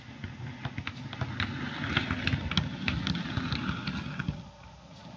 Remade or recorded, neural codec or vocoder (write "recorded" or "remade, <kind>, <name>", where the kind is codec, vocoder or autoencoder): recorded